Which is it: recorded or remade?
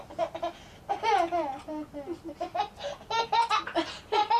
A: recorded